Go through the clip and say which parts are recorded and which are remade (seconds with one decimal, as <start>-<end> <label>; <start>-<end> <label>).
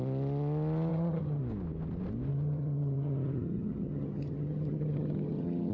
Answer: 0.0-0.9 recorded; 0.9-1.4 remade; 1.4-2.3 recorded; 2.3-5.7 remade